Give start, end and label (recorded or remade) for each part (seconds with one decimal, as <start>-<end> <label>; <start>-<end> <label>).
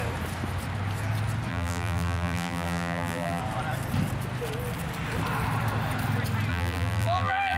0.0-1.5 recorded; 1.5-3.4 remade; 3.4-6.5 recorded; 6.5-7.6 remade